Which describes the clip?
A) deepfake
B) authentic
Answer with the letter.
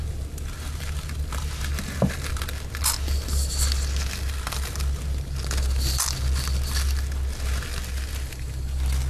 B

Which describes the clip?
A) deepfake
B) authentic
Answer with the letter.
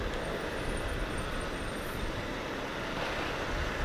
B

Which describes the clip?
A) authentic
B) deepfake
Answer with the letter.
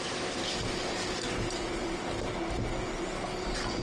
A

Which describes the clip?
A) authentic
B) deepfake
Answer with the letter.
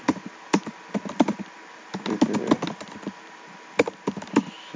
A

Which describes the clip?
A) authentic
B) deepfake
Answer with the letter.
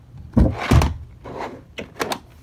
A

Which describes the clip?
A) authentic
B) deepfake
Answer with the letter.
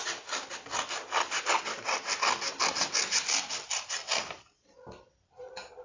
A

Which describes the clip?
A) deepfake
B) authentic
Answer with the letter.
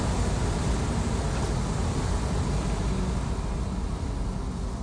B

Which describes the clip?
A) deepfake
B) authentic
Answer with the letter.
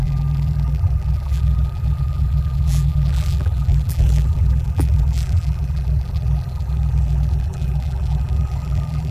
A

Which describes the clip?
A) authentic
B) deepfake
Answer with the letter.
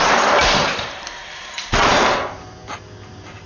B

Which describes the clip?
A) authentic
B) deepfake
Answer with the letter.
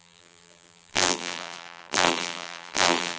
B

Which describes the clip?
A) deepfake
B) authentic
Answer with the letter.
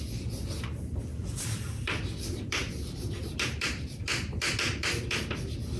A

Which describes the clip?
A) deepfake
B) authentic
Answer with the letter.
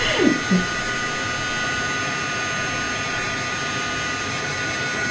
B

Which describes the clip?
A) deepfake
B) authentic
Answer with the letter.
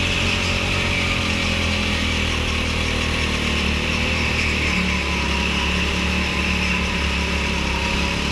B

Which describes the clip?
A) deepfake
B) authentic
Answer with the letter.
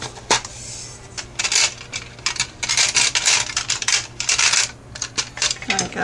B